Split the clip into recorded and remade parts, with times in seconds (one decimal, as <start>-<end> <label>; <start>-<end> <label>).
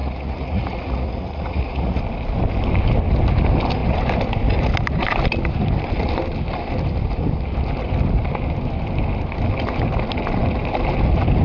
0.0-2.0 remade; 2.0-11.4 recorded